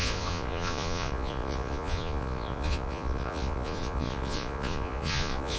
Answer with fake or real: fake